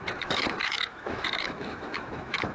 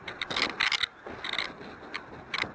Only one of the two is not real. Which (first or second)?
first